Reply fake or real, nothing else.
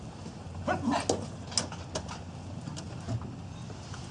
real